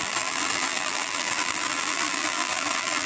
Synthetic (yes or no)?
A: yes